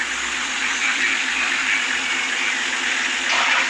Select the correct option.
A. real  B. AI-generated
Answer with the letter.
A